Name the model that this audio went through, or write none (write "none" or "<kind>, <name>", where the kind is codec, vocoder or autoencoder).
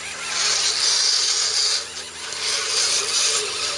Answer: none